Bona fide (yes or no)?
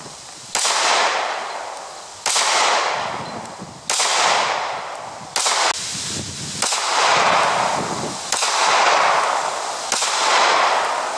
yes